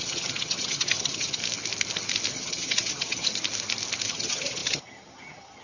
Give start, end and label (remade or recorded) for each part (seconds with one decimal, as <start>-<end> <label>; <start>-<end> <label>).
0.0-1.4 remade; 1.4-2.3 recorded; 2.3-3.3 remade; 3.3-4.1 recorded; 4.1-5.6 remade